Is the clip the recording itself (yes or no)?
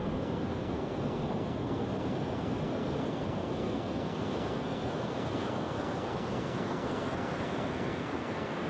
no